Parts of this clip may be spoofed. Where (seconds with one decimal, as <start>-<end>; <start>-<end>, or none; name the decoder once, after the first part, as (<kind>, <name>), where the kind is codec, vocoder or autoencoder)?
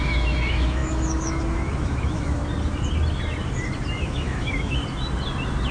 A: 0.0-2.4 (autoencoder, DAC-VAE); 3.9-4.8